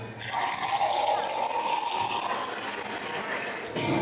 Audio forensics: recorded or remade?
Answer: recorded